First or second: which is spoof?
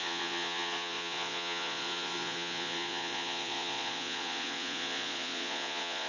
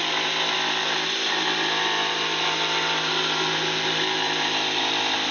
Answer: first